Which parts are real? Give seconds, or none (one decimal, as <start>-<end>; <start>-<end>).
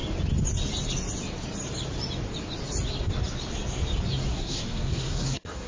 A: 0.0-4.3